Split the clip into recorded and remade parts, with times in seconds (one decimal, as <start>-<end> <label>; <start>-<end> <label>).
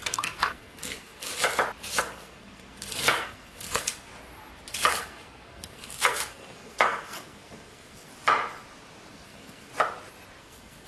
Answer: 0.0-1.3 remade; 1.3-2.0 recorded; 2.0-4.1 remade; 4.1-4.7 recorded; 4.7-8.1 remade; 8.1-9.1 recorded; 9.1-9.7 remade; 9.7-10.4 recorded; 10.4-10.9 remade